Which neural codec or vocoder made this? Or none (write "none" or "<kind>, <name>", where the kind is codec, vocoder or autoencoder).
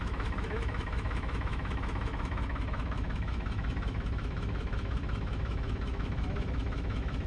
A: autoencoder, DAC-VAE